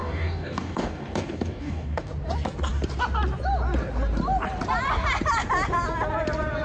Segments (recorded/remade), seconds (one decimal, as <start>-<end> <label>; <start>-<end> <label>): 0.0-2.1 remade; 2.1-6.6 recorded